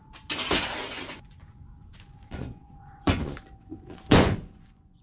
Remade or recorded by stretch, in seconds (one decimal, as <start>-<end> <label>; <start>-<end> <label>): 0.0-0.9 recorded; 0.9-5.0 remade